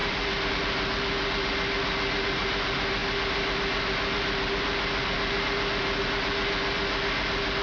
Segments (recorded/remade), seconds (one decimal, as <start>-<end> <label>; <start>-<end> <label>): 0.0-0.5 remade; 0.5-7.6 recorded